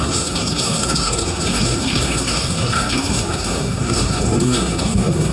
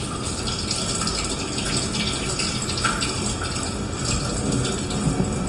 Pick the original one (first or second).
second